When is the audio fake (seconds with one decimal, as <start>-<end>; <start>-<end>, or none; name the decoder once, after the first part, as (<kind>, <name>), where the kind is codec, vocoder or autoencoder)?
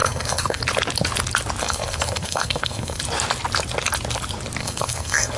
0.0-0.6 (codec, SNAC); 1.6-3.0; 4.6-5.4